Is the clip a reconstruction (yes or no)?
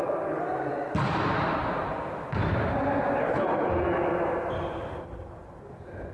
no